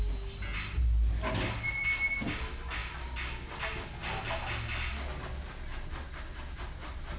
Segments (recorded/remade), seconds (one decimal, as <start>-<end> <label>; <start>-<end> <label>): 0.0-7.2 recorded